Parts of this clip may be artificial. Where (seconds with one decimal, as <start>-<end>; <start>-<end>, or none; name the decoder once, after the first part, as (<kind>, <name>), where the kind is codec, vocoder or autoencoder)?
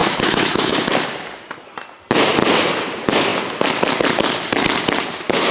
0.0-0.7 (autoencoder, DAC-VAE)